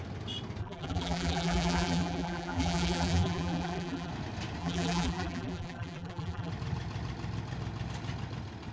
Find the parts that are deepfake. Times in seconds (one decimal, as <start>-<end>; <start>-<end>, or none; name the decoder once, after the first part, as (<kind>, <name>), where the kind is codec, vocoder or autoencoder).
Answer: 0.6-4.1 (vocoder, BigVGAN v2); 4.6-6.5